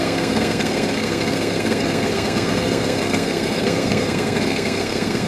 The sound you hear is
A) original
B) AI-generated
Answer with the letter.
B